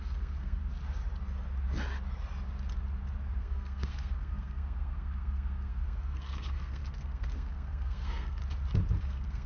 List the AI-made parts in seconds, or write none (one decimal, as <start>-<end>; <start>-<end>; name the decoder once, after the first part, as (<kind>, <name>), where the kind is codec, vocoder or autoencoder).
0.0-0.6 (codec, SNAC); 3.4-8.4; 9.0-9.5